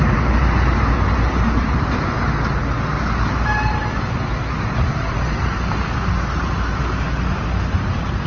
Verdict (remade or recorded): recorded